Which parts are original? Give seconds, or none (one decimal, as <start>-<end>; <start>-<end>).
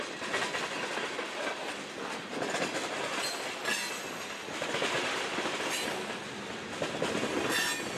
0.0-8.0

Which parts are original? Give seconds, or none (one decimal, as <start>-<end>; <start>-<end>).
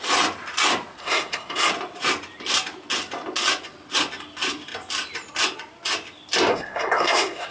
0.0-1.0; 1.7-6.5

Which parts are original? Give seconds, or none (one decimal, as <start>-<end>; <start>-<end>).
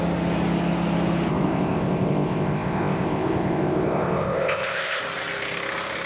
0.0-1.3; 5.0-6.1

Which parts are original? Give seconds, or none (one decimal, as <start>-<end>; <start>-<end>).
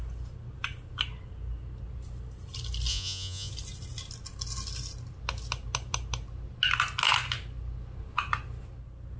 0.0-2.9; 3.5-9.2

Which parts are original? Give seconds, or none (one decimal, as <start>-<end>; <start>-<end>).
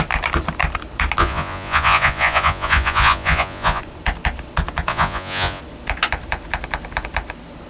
0.0-1.2; 3.8-4.9; 5.6-7.7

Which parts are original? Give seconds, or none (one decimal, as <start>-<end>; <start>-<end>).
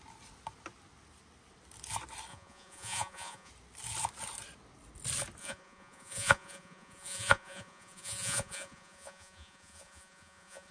0.0-2.3; 3.5-5.4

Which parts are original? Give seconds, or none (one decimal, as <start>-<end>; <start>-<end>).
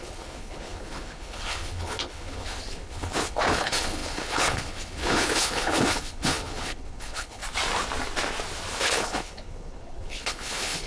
7.4-8.8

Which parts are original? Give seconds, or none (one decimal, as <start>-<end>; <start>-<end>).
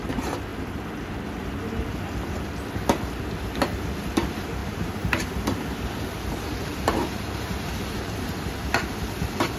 0.0-4.6; 5.3-6.7; 8.3-9.6